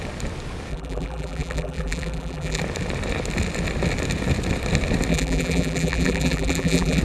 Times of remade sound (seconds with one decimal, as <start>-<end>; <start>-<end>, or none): 0.7-2.6; 5.1-7.0